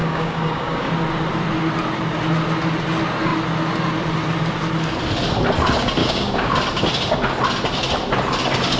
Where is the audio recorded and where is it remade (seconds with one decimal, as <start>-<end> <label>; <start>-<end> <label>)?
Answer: 0.0-0.9 remade; 0.9-6.0 recorded; 6.0-6.5 remade; 6.5-8.8 recorded